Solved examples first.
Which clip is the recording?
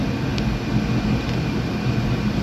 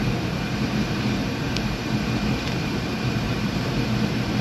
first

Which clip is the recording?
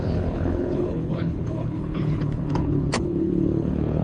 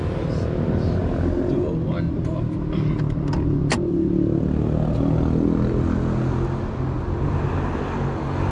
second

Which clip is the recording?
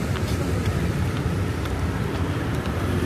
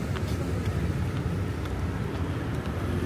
second